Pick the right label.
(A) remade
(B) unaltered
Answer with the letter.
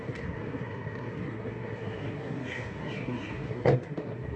A